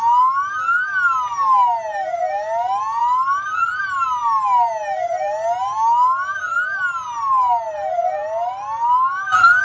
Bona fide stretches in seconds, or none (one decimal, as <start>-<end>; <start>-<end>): 0.0-9.6